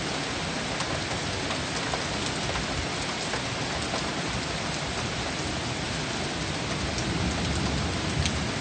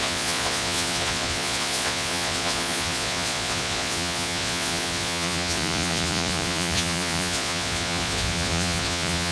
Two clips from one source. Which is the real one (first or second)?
first